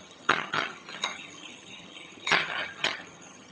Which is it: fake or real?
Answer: fake